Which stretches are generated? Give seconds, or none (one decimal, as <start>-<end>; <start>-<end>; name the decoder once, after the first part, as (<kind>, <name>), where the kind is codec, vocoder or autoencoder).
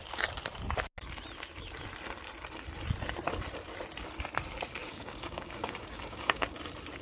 4.8-6.5 (codec, DAC)